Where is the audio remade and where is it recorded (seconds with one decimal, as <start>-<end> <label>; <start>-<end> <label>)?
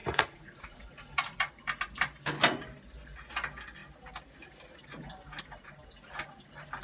0.0-1.5 remade; 1.5-6.8 recorded